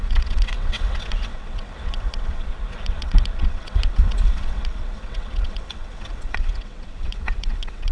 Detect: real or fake fake